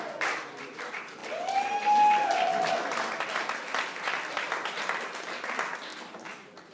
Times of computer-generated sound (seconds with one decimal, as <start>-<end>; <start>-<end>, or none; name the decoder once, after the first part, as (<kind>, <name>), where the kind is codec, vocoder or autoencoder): none